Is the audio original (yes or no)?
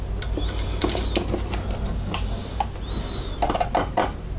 yes